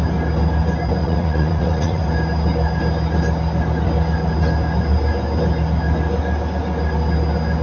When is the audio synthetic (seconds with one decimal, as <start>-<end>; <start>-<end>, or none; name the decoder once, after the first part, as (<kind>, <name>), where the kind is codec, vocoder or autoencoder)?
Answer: 1.0-2.0 (vocoder, Vocos)